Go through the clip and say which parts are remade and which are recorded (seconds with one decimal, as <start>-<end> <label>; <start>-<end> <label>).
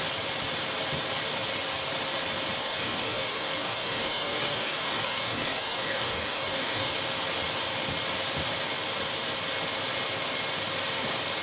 0.0-2.6 recorded; 2.6-6.9 remade; 6.9-11.4 recorded